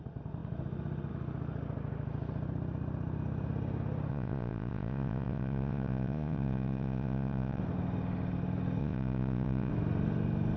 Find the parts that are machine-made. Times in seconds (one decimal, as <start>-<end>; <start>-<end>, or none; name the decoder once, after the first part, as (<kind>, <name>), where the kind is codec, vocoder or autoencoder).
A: 4.1-7.6 (vocoder, Vocos); 8.8-9.7